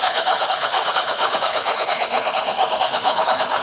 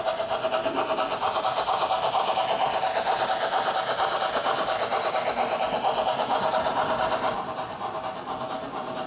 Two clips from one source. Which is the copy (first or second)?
first